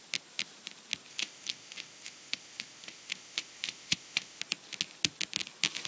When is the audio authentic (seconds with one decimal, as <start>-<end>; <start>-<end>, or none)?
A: 0.0-1.1; 4.4-5.9